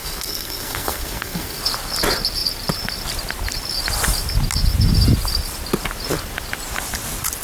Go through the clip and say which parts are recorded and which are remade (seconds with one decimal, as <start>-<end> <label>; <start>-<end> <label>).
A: 0.0-1.6 remade; 1.6-7.4 recorded